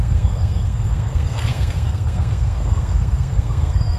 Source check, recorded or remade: remade